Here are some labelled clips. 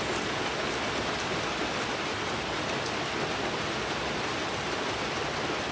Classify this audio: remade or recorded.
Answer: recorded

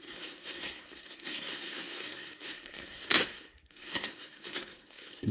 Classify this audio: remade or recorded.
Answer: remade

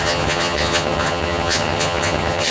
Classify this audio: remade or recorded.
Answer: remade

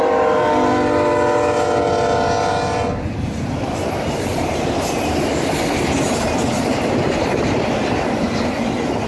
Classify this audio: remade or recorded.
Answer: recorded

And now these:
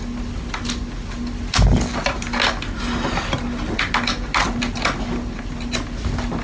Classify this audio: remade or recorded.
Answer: recorded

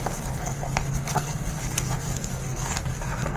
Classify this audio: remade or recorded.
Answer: remade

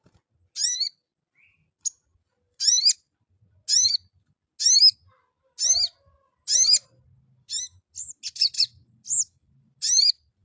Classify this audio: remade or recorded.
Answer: recorded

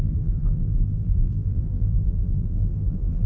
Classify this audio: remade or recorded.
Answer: remade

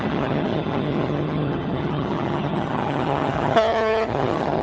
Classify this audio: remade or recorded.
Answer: remade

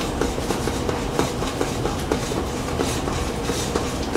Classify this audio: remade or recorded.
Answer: remade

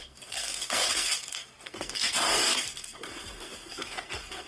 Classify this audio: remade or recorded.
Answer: remade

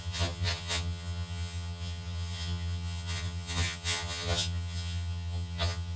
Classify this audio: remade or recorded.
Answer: remade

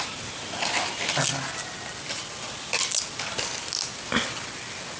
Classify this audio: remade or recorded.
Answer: recorded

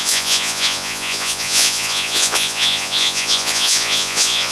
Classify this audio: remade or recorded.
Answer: remade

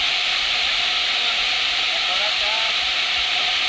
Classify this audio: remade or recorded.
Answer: recorded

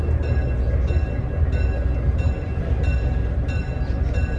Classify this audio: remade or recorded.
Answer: recorded